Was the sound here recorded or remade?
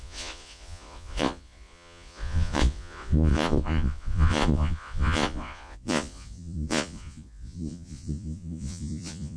remade